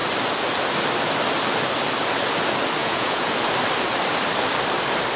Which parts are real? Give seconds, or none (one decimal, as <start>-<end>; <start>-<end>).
0.0-2.8; 3.3-5.2